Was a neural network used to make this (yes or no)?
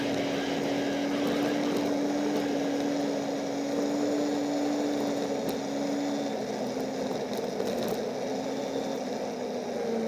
no